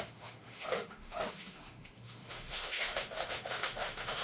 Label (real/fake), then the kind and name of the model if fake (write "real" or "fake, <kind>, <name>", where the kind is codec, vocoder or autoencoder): fake, autoencoder, DAC-VAE